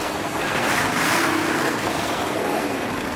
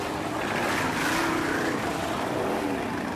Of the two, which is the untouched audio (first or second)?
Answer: second